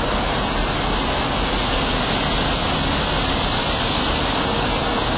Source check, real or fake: real